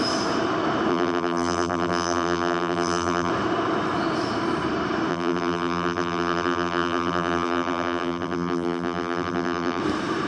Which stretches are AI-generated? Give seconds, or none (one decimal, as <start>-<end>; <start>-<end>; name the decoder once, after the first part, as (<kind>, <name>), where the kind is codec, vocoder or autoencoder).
0.9-3.3 (vocoder, BigVGAN v2); 5.1-9.8